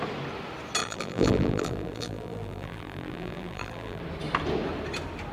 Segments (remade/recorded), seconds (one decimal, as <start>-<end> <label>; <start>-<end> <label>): 0.0-0.8 recorded; 0.8-4.0 remade; 4.0-5.3 recorded